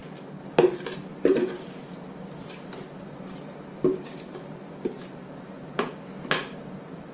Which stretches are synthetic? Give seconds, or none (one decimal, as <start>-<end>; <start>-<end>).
1.1-5.4